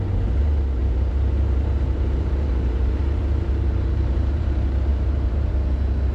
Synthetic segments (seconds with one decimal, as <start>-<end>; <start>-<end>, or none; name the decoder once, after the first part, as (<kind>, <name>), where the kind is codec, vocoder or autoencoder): 0.8-4.5 (vocoder, BigVGAN v2); 4.9-5.5